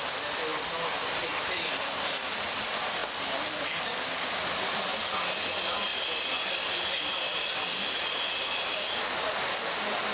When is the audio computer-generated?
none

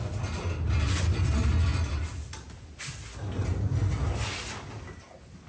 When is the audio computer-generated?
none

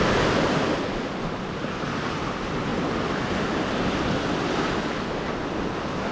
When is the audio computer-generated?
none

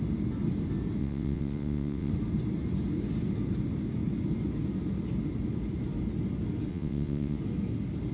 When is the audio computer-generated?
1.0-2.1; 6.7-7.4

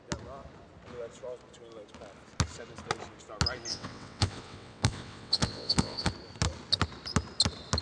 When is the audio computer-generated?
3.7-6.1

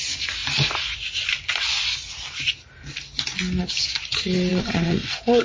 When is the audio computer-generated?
4.5-5.4